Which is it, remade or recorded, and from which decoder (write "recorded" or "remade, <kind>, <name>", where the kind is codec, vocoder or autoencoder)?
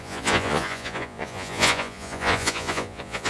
remade, vocoder, Vocos